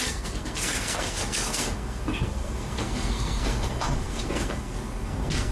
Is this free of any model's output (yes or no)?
no